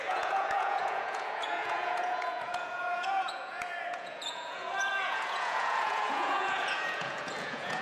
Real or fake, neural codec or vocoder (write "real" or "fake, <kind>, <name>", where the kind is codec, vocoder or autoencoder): fake, vocoder, Vocos